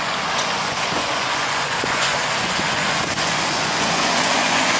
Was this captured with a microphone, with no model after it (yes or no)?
no